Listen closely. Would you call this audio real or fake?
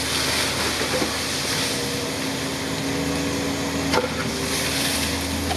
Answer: real